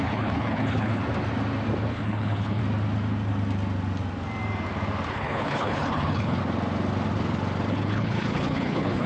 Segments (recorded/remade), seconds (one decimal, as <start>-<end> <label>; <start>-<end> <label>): 0.0-1.0 remade; 1.0-1.9 recorded; 1.9-2.6 remade; 2.6-5.1 recorded; 5.1-6.4 remade; 6.4-7.7 recorded; 7.7-9.1 remade